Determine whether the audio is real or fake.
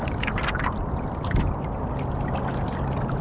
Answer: real